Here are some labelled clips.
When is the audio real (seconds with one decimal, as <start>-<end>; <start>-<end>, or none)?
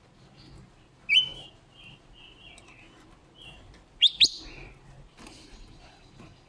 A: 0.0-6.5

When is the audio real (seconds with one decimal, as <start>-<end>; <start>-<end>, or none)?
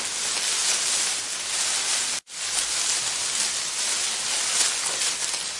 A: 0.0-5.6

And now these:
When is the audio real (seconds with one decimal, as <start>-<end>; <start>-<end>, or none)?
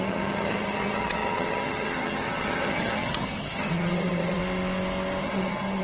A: 4.4-5.2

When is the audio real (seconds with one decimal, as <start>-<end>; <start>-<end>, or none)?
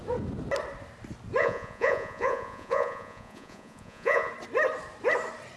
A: 0.0-1.4; 4.3-5.6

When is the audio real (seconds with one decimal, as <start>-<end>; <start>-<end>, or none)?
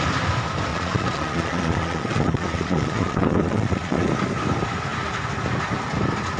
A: 0.0-0.7; 4.1-6.4